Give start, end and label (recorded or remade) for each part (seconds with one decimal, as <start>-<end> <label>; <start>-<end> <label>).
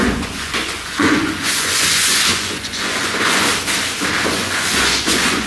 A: 0.0-3.5 remade; 3.5-4.3 recorded; 4.3-5.5 remade